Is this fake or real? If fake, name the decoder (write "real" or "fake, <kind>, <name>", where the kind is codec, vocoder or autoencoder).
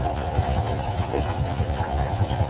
fake, vocoder, Vocos